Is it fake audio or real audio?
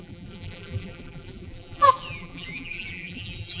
fake